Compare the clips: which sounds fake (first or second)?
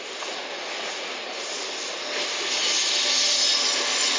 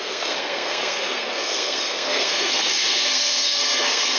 second